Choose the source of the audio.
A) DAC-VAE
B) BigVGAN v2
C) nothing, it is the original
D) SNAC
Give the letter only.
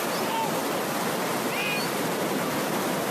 C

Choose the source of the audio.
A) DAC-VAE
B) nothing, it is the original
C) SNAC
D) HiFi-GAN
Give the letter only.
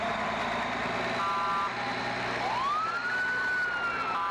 B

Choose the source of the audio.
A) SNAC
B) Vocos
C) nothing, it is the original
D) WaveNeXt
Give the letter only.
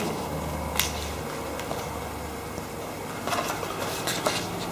C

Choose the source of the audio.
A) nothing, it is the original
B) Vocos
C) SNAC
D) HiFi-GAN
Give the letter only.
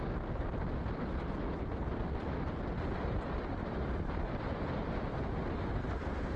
A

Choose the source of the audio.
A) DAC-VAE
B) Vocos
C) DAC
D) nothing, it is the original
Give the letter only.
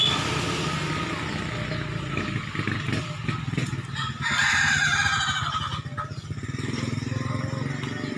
D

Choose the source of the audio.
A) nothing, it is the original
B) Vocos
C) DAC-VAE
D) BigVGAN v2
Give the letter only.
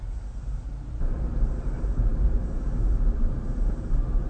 D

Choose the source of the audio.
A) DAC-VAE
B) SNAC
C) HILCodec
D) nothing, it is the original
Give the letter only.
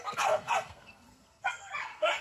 B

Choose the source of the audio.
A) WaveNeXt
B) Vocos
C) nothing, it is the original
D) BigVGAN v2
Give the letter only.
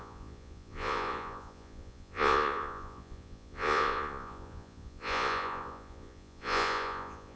B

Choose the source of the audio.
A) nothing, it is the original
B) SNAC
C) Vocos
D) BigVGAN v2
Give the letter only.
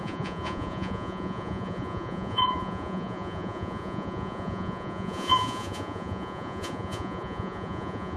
C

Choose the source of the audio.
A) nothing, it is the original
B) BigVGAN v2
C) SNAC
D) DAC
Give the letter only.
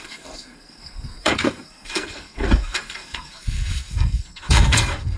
C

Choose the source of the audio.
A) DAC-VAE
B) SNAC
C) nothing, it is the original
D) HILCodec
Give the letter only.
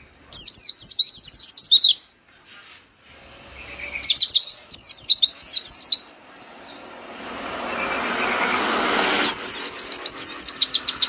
C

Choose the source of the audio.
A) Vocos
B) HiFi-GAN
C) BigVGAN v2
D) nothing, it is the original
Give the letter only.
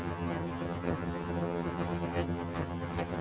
B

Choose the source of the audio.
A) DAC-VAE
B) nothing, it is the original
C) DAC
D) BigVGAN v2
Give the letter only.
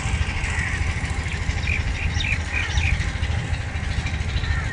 B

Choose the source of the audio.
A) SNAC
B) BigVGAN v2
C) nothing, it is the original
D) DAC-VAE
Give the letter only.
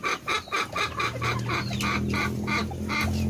C